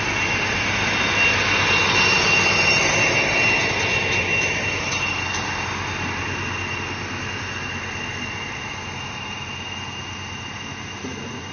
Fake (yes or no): no